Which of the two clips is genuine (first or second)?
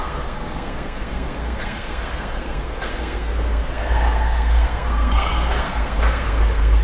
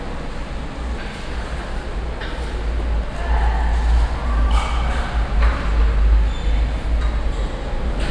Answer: second